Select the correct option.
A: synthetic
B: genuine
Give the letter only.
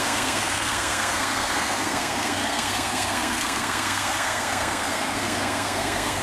A